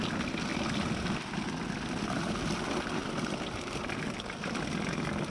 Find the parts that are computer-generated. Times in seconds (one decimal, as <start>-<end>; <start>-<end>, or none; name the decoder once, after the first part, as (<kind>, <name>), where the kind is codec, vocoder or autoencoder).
none